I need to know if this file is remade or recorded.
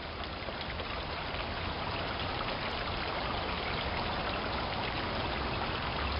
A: recorded